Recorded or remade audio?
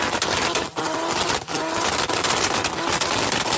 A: recorded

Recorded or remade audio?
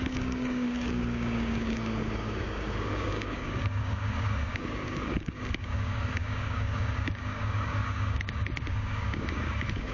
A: remade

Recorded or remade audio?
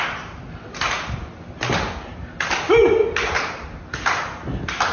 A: recorded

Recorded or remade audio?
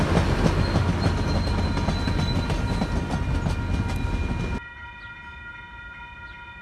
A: recorded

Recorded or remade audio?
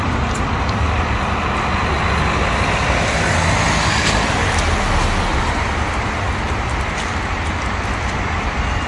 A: recorded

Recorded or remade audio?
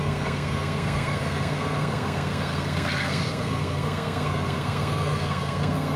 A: remade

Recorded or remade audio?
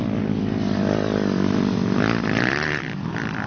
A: recorded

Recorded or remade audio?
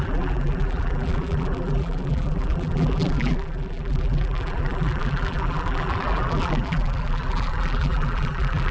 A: remade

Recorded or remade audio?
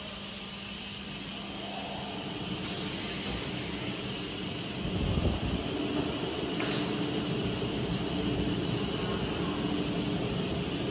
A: recorded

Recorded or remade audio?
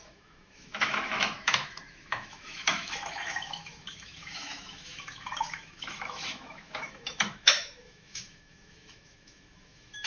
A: remade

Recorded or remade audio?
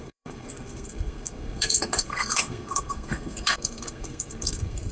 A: remade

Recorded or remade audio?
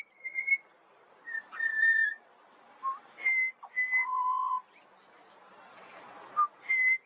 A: recorded